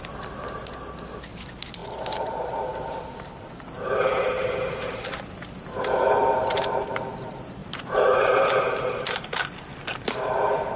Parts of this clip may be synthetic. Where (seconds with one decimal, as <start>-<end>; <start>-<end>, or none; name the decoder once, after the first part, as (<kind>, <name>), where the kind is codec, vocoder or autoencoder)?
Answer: 7.6-8.4 (vocoder, BigVGAN v2)